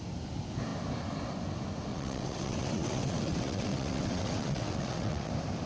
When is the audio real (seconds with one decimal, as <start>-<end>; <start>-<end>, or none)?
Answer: 0.0-1.9; 5.3-5.7